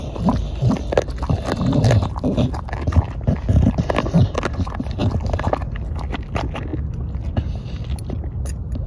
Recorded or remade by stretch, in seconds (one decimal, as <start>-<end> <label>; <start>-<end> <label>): 0.0-8.9 recorded